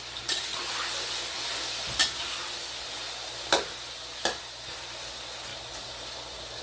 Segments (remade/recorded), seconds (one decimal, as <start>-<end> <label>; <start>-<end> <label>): 0.0-6.6 recorded